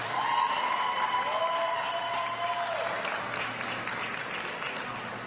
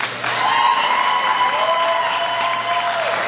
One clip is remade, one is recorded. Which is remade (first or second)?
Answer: first